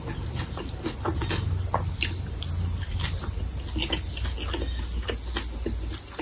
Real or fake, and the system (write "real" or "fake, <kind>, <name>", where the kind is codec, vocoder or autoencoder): real